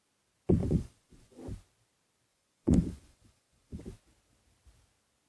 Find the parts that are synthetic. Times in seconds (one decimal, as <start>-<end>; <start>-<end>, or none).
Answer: 0.6-1.4; 2.3-3.8